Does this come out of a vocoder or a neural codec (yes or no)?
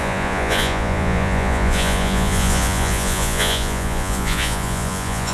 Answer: yes